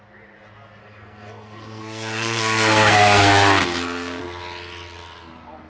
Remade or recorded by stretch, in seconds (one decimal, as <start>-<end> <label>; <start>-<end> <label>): 0.0-0.8 recorded; 0.8-4.2 remade; 4.2-5.7 recorded